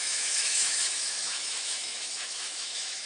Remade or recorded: remade